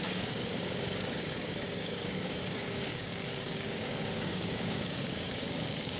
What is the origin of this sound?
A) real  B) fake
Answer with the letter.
B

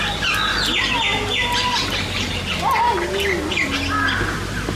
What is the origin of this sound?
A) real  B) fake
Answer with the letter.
A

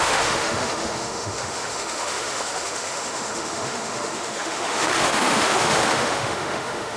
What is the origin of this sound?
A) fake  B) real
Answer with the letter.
A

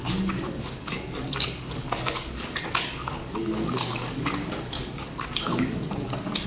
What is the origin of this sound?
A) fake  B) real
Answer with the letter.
A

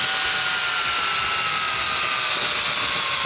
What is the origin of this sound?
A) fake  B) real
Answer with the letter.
B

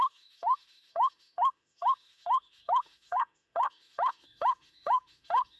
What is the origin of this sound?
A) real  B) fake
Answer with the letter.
B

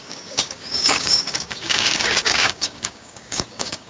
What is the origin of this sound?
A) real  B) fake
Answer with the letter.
B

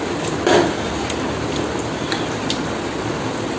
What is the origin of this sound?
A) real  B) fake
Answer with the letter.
A